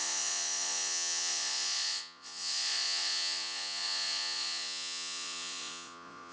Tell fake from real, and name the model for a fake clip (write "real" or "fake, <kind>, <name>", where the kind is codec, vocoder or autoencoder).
fake, vocoder, Vocos